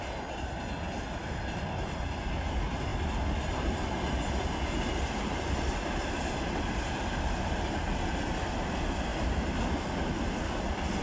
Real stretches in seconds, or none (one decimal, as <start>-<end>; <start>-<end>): 0.0-11.0